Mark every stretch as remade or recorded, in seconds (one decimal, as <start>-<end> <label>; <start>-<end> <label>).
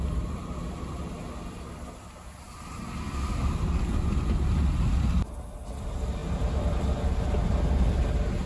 0.0-8.5 recorded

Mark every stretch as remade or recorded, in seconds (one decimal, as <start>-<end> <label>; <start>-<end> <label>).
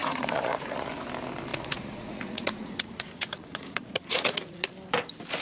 0.0-0.9 remade; 0.9-1.5 recorded; 1.5-4.7 remade; 4.7-5.4 recorded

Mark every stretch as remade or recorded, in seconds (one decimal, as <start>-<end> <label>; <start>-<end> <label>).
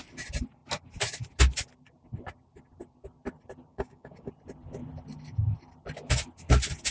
0.0-3.7 recorded; 3.7-4.3 remade; 4.3-6.9 recorded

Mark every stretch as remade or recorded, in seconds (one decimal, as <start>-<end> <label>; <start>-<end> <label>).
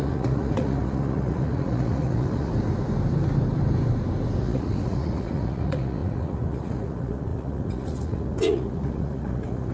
0.0-2.5 remade; 2.5-4.4 recorded; 4.4-9.7 remade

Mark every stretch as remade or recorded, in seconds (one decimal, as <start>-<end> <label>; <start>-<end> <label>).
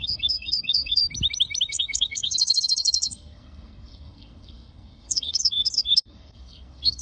0.0-1.0 remade; 1.0-1.7 recorded; 1.7-7.0 remade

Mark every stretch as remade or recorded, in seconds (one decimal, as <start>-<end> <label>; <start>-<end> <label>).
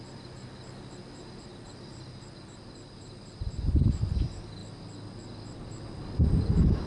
0.0-4.6 remade; 4.6-5.6 recorded; 5.6-6.9 remade